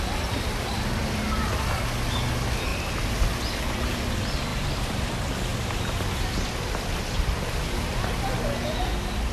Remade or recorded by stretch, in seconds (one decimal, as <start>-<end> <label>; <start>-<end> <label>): 0.0-4.5 recorded; 4.5-5.1 remade; 5.1-9.3 recorded